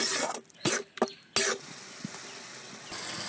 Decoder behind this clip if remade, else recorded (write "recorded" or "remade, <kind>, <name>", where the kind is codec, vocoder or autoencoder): recorded